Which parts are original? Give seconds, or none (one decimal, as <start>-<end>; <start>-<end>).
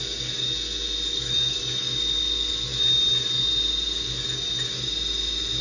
0.0-1.1; 1.6-5.6